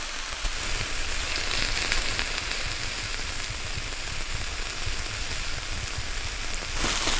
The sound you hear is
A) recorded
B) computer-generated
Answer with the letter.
A